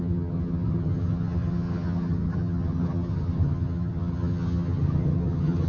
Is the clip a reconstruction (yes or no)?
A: yes